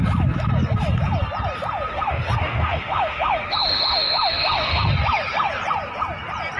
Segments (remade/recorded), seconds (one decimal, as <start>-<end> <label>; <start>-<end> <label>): 0.0-1.9 recorded; 1.9-4.9 remade; 4.9-6.6 recorded